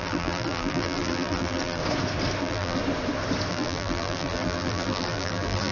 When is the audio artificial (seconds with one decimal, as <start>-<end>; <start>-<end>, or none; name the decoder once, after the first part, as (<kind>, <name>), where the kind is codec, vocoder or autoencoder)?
0.0-1.8 (vocoder, BigVGAN v2); 2.4-2.8; 3.5-5.7